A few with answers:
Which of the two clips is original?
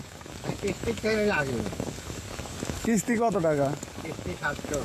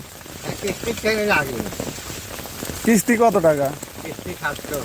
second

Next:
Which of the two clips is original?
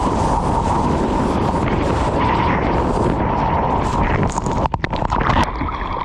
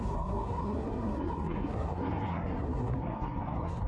first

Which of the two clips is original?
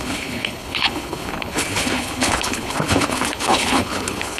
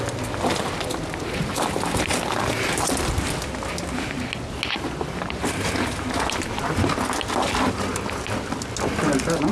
second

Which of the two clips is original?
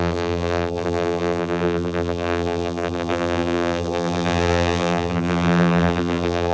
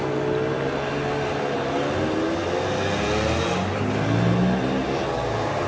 second